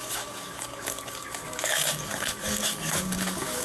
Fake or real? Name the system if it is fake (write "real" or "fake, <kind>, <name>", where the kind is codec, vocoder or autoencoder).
fake, codec, DAC